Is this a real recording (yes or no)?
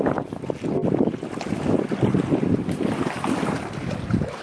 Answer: yes